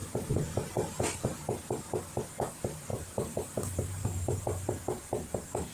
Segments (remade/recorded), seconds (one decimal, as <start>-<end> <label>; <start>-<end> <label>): 0.0-2.9 recorded; 2.9-4.4 remade; 4.4-5.7 recorded